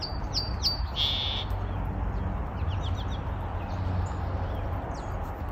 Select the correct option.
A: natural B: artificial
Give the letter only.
A